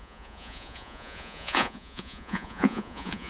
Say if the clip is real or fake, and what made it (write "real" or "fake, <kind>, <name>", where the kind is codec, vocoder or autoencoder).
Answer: fake, vocoder, Vocos